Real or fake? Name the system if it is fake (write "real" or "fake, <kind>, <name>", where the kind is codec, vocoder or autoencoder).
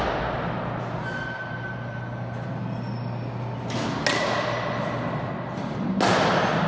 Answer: real